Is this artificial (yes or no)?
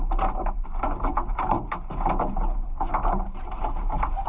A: no